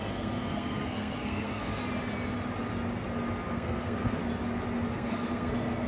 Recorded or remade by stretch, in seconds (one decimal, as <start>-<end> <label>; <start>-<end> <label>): 0.0-1.8 remade; 1.8-3.5 recorded; 3.5-4.2 remade; 4.2-4.9 recorded; 4.9-5.9 remade